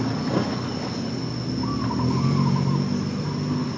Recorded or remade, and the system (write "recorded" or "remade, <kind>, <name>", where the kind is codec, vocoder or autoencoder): recorded